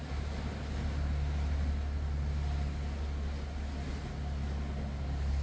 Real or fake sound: real